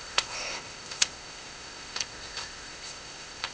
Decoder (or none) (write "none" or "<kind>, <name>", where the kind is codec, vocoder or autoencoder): codec, ZipCodec